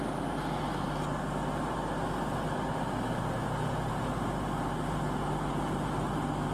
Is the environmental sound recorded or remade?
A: recorded